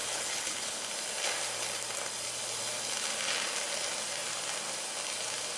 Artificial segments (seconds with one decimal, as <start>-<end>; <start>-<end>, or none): 0.0-0.9